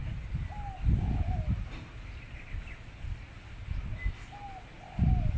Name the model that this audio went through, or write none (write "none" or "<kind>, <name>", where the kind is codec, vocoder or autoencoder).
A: none